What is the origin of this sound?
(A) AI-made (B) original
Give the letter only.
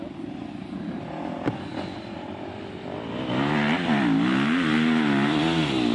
B